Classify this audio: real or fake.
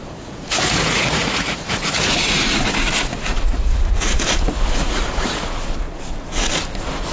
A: fake